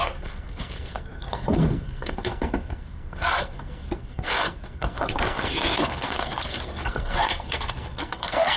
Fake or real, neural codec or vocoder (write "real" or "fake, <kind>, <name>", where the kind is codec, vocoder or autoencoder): fake, codec, SNAC